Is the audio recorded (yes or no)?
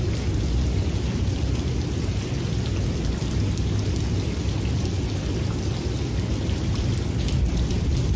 yes